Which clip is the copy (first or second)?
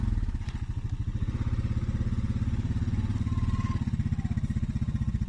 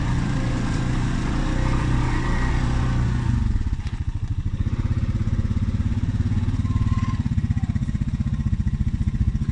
second